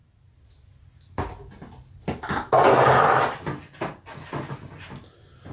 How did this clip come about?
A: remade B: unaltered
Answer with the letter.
B